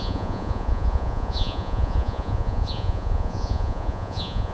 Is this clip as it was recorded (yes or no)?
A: no